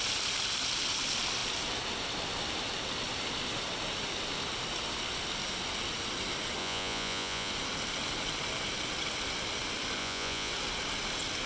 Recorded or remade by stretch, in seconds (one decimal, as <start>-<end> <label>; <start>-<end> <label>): 0.0-6.6 recorded; 6.6-7.5 remade; 7.5-10.0 recorded; 10.0-10.5 remade; 10.5-11.5 recorded